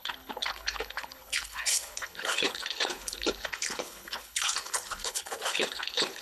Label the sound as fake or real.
fake